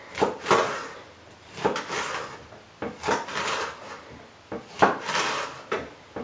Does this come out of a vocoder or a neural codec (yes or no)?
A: no